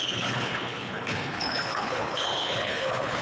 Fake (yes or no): yes